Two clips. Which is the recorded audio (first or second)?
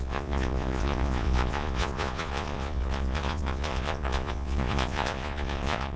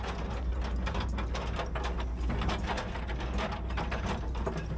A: second